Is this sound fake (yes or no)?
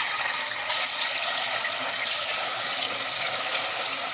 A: no